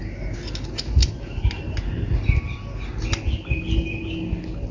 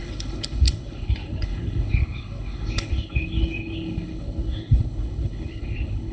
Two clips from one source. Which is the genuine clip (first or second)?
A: first